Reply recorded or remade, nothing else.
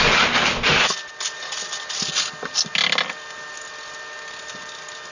recorded